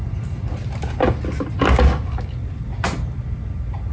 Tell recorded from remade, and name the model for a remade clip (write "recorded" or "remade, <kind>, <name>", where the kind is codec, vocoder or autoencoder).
recorded